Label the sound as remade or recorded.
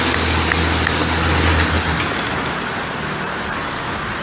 recorded